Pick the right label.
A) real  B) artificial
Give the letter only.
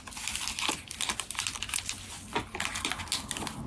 A